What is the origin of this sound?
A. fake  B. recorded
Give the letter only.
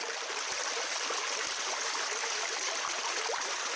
B